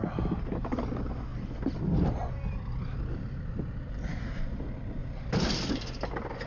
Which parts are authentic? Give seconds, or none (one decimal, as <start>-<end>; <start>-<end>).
0.0-1.3; 4.3-5.0; 5.7-6.5